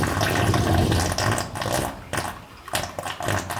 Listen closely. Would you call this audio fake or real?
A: real